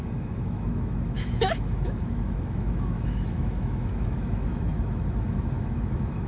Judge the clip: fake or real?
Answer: fake